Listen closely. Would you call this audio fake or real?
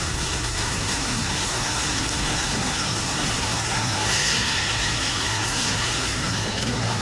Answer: fake